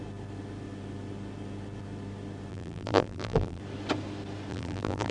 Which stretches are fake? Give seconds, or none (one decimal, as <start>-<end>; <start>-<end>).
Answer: 2.5-3.6; 4.5-5.1